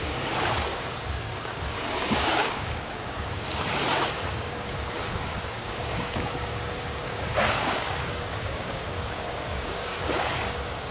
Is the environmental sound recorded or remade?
remade